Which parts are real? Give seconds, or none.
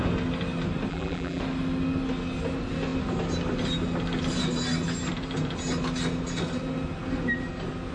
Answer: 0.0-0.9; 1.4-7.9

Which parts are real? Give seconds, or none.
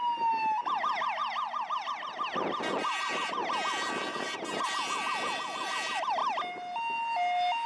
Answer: 0.0-1.2; 1.9-7.7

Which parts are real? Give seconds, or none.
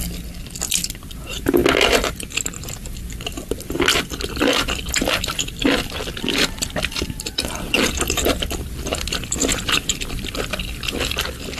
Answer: 0.0-3.9; 8.7-9.5; 10.6-11.6